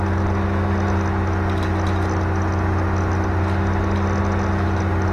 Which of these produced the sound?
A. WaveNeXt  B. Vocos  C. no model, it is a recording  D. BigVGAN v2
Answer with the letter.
C